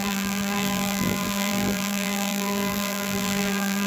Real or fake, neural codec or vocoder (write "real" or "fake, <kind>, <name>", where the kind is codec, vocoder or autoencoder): fake, vocoder, BigVGAN v2